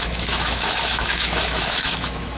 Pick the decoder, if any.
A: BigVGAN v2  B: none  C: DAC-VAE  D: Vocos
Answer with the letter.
C